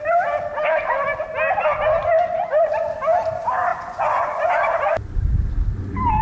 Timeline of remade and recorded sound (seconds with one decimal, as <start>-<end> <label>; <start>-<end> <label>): 0.0-3.7 recorded; 3.7-4.7 remade; 4.7-6.2 recorded